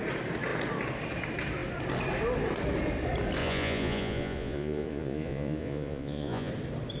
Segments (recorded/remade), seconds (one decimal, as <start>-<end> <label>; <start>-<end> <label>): 0.0-3.4 recorded; 3.4-6.5 remade; 6.5-7.0 recorded